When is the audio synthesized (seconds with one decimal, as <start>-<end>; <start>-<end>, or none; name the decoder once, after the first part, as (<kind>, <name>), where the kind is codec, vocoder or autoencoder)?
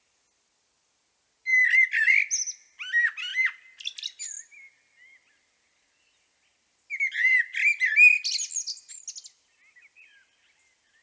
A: none